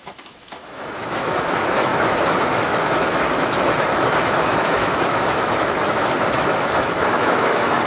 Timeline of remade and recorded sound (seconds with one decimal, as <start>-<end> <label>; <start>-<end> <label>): 0.0-7.9 remade